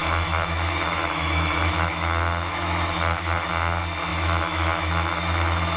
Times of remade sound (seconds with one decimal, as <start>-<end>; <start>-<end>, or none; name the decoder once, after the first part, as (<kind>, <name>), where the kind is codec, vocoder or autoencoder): 0.0-3.5 (autoencoder, DAC-VAE); 4.1-5.8